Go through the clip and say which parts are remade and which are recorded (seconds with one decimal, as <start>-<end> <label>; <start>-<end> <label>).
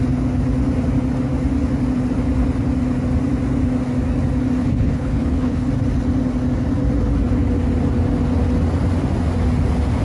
0.0-4.6 recorded; 4.6-5.7 remade; 5.7-10.0 recorded